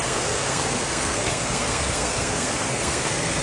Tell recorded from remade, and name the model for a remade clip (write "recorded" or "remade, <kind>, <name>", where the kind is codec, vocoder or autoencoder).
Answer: remade, codec, SNAC